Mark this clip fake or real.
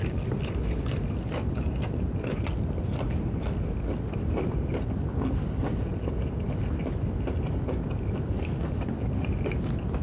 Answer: real